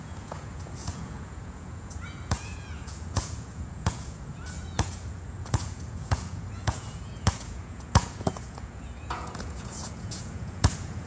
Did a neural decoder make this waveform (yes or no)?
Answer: yes